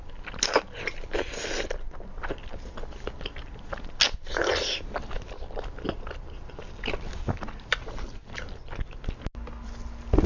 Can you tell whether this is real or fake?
real